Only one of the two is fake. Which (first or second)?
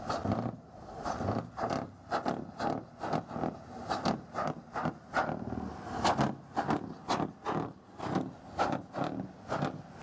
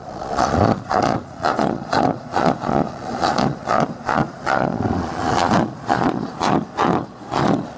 second